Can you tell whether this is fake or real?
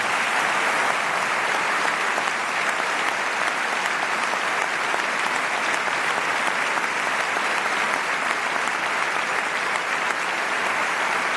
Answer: fake